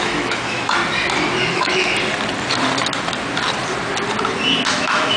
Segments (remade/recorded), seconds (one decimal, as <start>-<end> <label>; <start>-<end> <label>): 0.0-0.8 remade; 0.8-1.5 recorded; 1.5-1.9 remade; 1.9-4.7 recorded; 4.7-5.2 remade